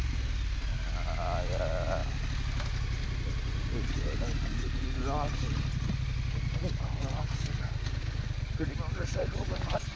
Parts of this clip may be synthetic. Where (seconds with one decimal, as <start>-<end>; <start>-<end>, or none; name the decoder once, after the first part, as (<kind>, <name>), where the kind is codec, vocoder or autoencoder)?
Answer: none